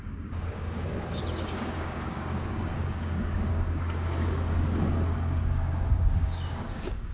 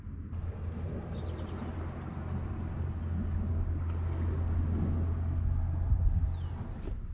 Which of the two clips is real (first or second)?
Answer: second